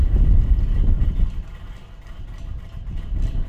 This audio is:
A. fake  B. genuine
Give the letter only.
B